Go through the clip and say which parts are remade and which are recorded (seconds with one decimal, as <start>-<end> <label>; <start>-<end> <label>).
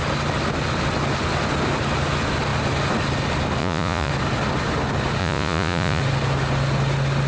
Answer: 0.0-3.6 recorded; 3.6-4.1 remade; 4.1-5.2 recorded; 5.2-6.0 remade; 6.0-7.3 recorded